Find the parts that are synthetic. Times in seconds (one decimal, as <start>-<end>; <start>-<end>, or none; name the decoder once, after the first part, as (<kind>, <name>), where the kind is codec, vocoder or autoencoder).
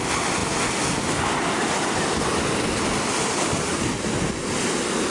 none